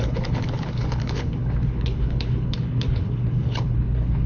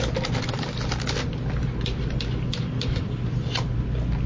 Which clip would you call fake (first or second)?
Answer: first